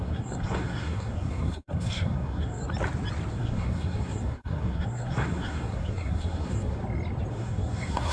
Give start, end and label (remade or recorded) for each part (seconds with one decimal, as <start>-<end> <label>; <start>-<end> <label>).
0.0-2.6 remade; 2.6-3.3 recorded; 3.3-6.8 remade; 6.8-7.3 recorded; 7.3-8.1 remade